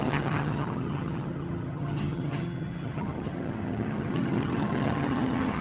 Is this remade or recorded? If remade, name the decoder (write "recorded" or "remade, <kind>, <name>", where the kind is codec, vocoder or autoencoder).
remade, vocoder, HiFi-GAN